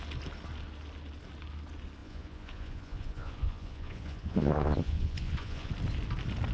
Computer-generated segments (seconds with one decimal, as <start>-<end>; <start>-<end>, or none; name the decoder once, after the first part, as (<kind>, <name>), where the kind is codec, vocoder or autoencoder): 2.0-5.7 (vocoder, Vocos)